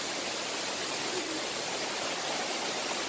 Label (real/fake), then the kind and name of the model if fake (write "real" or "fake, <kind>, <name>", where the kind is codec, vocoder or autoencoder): real